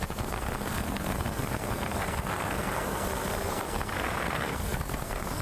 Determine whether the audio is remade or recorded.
remade